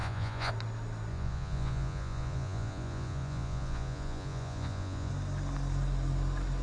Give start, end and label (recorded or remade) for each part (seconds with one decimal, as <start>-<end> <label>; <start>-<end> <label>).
0.0-0.5 remade; 0.5-1.1 recorded; 1.1-5.1 remade; 5.1-6.6 recorded